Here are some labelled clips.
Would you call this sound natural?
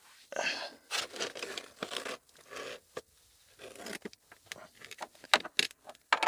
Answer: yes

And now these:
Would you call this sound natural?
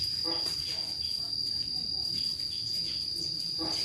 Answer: yes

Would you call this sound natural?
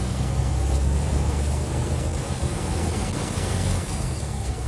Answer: no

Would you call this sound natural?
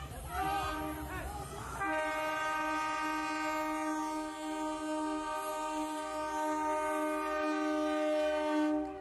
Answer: yes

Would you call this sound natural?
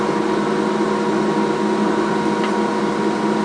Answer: yes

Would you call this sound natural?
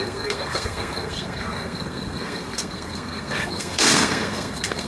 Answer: no